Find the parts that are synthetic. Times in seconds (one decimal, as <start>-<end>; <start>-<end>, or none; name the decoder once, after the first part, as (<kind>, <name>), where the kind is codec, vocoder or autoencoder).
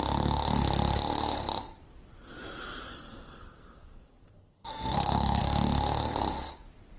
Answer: 2.9-5.4 (codec, SNAC)